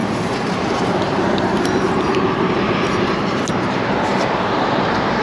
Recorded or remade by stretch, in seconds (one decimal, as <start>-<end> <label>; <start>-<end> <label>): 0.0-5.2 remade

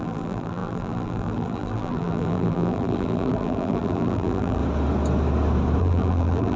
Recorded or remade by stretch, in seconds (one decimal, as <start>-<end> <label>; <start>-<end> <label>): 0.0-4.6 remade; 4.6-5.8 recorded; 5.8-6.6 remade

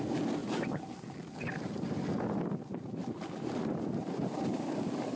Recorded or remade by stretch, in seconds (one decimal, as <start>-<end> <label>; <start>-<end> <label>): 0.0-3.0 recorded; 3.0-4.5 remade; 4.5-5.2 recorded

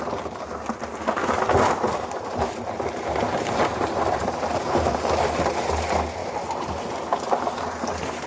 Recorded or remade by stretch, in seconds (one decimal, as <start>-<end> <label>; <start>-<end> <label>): 0.0-1.2 recorded; 1.2-5.2 remade; 5.2-6.2 recorded; 6.2-6.8 remade; 6.8-8.3 recorded

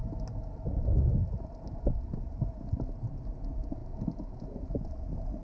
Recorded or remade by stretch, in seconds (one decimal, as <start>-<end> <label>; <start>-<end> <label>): 0.0-5.4 recorded

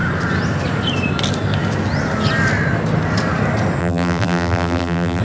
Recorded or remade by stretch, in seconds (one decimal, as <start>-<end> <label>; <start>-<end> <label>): 0.0-3.8 recorded; 3.8-5.2 remade

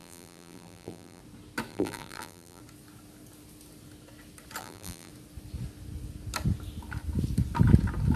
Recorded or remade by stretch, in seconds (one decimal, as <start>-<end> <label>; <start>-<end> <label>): 0.0-1.2 remade; 1.2-1.7 recorded; 1.7-2.6 remade; 2.6-4.6 recorded; 4.6-5.1 remade; 5.1-8.2 recorded